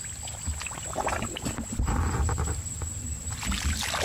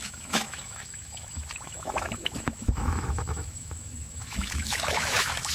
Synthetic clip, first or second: second